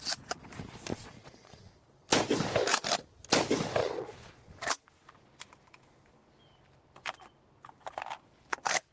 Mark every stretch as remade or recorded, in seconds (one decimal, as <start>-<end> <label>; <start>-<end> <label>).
0.0-0.9 recorded; 0.9-1.7 remade; 1.7-3.8 recorded; 3.8-4.7 remade; 4.7-8.9 recorded